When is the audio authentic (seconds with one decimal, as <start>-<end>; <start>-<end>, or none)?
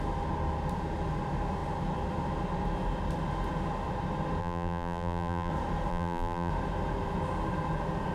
0.0-4.4; 5.5-5.9; 6.5-8.1